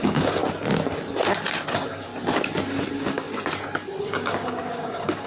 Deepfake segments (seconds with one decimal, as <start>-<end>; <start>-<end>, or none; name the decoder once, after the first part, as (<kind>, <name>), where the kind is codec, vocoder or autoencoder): 0.0-0.4 (codec, DAC); 1.7-2.1; 2.9-3.3; 4.0-5.3